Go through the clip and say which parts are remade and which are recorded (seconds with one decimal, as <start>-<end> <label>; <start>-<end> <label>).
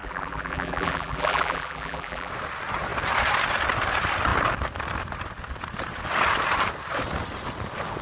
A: 0.0-2.3 remade; 2.3-8.0 recorded